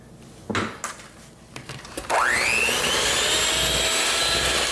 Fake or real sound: real